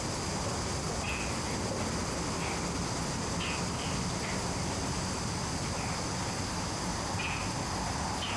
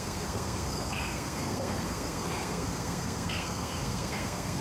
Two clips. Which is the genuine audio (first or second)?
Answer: first